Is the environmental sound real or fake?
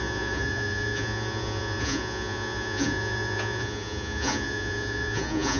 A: fake